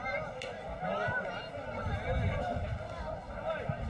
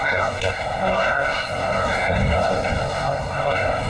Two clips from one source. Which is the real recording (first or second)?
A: first